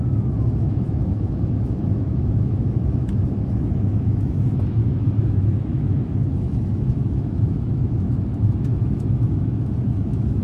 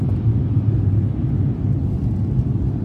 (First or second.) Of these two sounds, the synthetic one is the first